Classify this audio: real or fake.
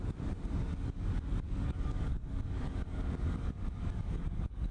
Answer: fake